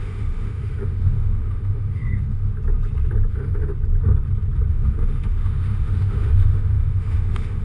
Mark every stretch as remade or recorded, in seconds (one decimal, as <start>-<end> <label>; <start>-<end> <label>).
0.0-2.5 remade; 2.5-3.3 recorded; 3.3-3.7 remade; 3.7-4.7 recorded; 4.7-7.6 remade